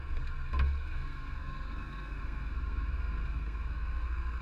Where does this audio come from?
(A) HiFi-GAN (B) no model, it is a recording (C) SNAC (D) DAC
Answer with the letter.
C